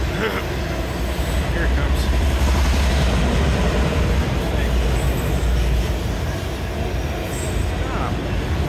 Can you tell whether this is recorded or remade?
recorded